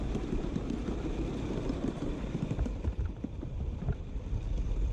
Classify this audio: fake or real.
fake